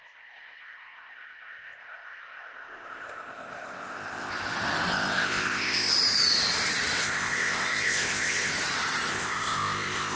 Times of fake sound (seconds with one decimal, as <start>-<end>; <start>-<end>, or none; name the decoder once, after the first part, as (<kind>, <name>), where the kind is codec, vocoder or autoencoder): 0.0-4.3 (codec, ZipCodec); 4.9-5.9; 7.0-8.5; 9.1-10.2